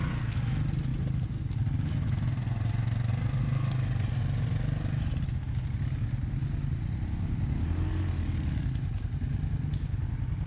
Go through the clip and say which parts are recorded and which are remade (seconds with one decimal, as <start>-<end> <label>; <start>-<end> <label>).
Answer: 0.0-10.5 recorded